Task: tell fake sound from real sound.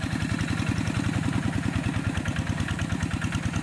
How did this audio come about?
real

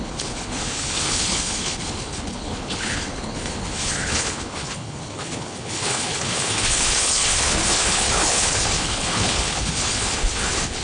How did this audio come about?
fake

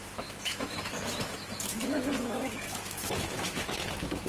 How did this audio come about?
fake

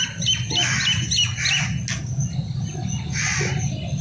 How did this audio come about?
real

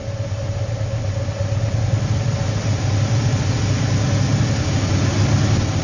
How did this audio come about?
real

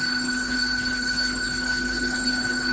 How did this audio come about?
fake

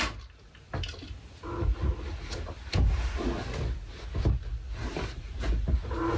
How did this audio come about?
real